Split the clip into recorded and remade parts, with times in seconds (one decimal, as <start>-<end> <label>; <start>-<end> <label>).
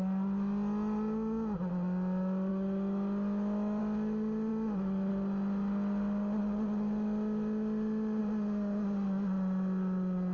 0.0-2.5 recorded; 2.5-3.8 remade; 3.8-4.5 recorded; 4.5-5.1 remade; 5.1-10.3 recorded